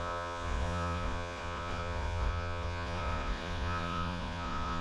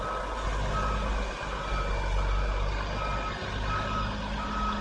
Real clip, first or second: second